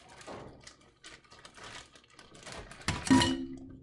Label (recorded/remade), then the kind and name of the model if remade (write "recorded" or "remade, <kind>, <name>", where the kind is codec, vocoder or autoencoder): recorded